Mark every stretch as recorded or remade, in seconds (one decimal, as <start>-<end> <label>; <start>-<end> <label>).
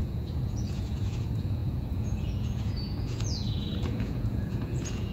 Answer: 0.0-5.1 remade